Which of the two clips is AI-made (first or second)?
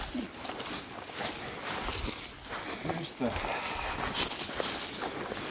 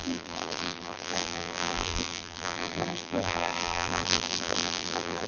second